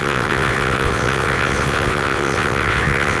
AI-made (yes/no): yes